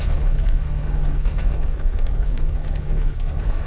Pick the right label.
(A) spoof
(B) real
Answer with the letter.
A